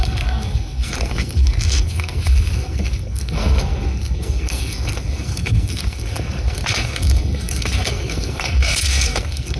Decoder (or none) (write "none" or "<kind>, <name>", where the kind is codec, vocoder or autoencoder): codec, SNAC